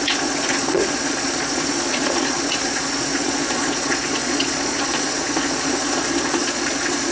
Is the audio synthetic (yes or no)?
yes